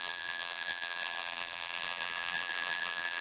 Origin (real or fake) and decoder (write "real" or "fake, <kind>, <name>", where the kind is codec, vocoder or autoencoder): fake, vocoder, BigVGAN v2